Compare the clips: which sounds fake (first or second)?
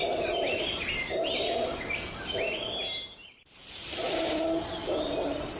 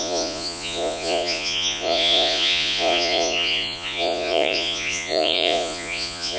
second